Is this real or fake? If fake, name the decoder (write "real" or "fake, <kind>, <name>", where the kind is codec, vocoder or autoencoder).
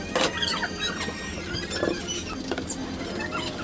real